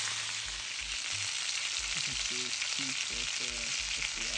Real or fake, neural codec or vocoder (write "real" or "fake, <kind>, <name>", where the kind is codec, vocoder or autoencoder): real